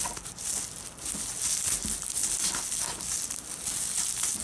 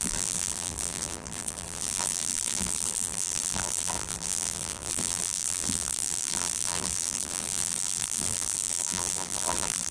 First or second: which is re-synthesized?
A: second